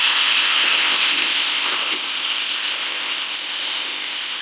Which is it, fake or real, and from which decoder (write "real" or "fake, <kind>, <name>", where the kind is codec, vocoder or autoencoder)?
fake, codec, ZipCodec